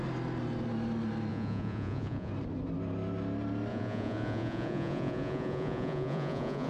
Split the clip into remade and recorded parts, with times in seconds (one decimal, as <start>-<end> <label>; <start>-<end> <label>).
0.0-1.3 recorded; 1.3-2.3 remade; 2.3-3.7 recorded; 3.7-6.7 remade